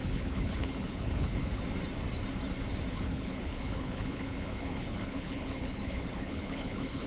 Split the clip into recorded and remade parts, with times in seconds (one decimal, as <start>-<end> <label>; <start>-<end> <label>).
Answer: 0.0-1.6 remade; 1.6-2.9 recorded; 2.9-7.1 remade